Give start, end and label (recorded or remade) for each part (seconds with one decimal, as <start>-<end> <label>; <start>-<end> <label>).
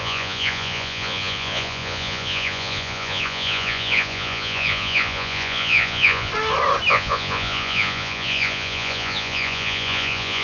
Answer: 0.0-6.3 remade; 6.3-6.9 recorded; 6.9-10.4 remade